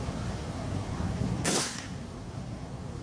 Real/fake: fake